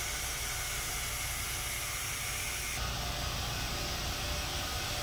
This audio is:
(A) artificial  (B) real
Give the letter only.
B